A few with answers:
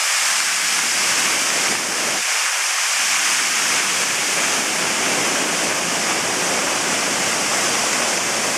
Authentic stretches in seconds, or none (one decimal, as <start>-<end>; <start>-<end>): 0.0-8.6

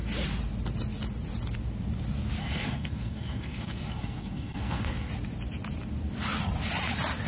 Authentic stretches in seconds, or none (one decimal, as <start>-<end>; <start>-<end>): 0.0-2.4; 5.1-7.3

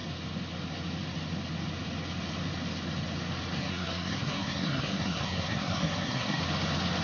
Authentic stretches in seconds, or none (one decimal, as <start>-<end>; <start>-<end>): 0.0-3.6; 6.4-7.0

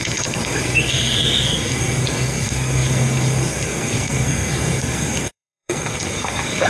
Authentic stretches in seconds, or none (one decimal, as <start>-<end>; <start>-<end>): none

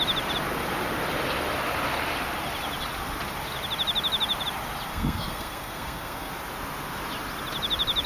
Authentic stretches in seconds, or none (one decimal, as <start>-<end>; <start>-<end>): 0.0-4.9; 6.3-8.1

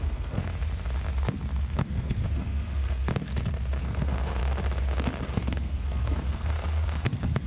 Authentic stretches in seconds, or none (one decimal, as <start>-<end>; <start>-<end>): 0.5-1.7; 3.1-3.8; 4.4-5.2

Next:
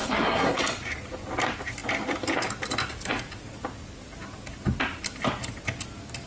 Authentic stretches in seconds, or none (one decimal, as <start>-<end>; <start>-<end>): 0.6-6.3